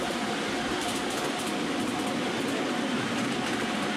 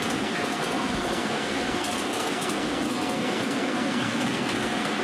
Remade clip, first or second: second